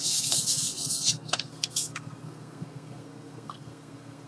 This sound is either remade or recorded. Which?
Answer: remade